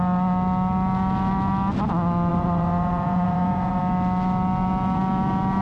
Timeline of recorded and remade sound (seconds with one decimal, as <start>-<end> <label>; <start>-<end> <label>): 0.0-2.3 recorded; 2.3-3.8 remade; 3.8-5.6 recorded